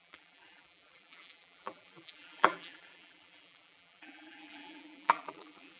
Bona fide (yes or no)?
no